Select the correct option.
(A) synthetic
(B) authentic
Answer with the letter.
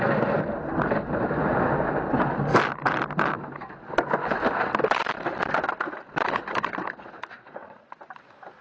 B